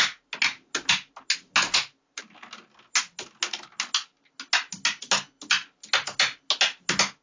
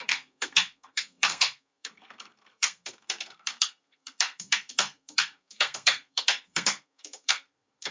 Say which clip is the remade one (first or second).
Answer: second